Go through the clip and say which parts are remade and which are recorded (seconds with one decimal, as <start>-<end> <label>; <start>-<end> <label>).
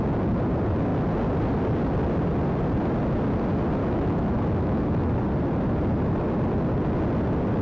0.0-3.8 recorded; 3.8-5.1 remade; 5.1-7.6 recorded